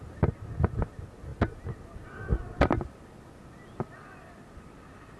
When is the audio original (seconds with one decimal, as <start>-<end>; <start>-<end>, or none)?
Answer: 0.0-5.2